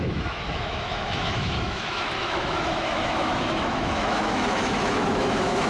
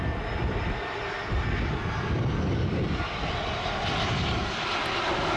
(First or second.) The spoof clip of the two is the first